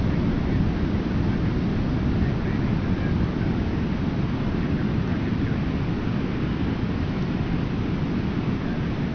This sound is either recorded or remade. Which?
recorded